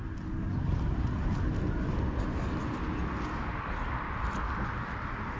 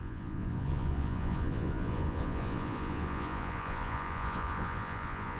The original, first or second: first